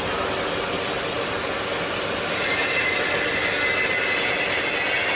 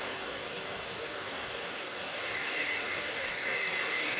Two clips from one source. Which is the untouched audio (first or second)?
first